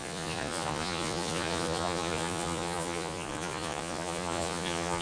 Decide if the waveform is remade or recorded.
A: remade